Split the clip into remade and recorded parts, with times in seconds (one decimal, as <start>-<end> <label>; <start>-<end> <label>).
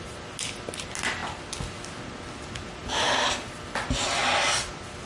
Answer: 0.0-2.8 recorded; 2.8-4.1 remade; 4.1-5.1 recorded